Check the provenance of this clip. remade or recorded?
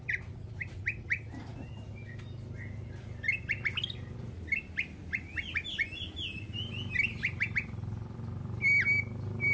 recorded